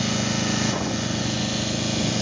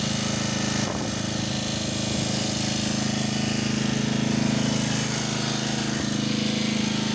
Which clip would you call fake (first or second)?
first